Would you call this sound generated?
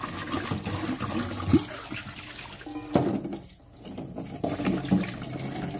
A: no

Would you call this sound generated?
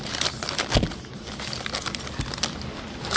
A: no